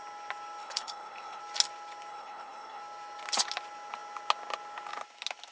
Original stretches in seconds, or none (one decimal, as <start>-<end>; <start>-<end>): 0.0-0.6; 1.4-2.1; 2.8-5.5